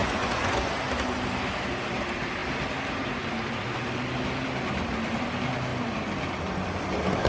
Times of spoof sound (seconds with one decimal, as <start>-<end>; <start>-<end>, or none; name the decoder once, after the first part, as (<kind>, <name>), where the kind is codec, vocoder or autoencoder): 0.0-0.7 (vocoder, Vocos)